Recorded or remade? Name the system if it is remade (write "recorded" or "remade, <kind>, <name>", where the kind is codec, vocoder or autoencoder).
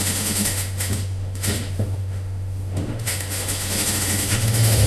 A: remade, autoencoder, DAC-VAE